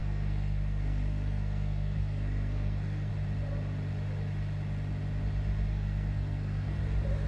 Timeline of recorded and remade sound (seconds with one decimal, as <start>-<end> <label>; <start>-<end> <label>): 0.0-3.1 remade; 3.1-5.7 recorded; 5.7-6.8 remade; 6.8-7.3 recorded